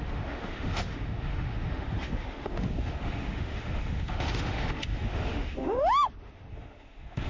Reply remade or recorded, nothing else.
remade